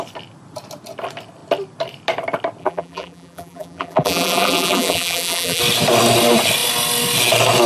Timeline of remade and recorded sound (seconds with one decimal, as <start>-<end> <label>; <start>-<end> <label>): 0.0-2.6 recorded; 2.6-5.6 remade; 5.6-7.7 recorded